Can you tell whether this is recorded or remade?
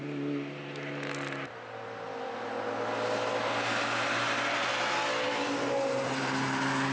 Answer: recorded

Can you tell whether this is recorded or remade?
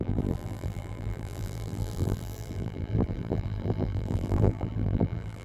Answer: remade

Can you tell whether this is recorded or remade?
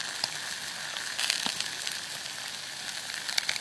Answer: recorded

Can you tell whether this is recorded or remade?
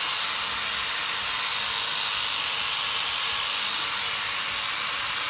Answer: recorded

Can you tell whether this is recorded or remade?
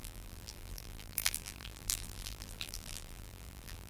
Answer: remade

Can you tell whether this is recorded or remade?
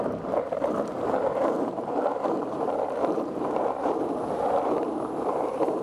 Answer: remade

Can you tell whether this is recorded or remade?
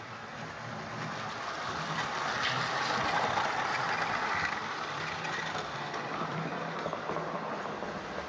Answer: recorded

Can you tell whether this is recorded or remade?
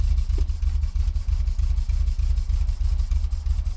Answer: recorded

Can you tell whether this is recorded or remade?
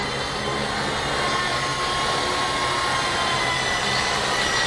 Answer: recorded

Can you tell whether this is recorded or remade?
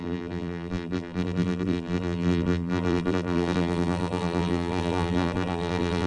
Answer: remade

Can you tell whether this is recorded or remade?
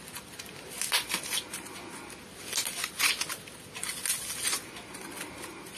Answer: recorded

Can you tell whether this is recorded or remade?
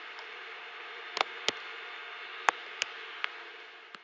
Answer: recorded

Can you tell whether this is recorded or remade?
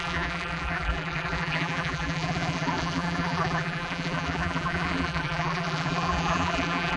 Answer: remade